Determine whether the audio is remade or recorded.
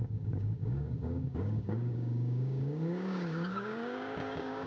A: remade